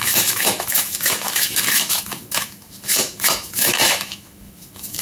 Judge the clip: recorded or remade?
remade